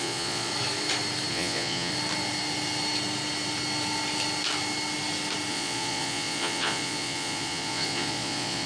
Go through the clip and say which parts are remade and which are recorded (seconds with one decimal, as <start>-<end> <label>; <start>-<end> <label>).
0.0-0.5 remade; 0.5-1.3 recorded; 1.3-1.9 remade; 1.9-5.5 recorded; 5.5-8.7 remade